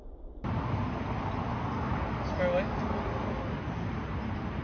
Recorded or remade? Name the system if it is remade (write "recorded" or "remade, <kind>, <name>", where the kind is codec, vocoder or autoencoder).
recorded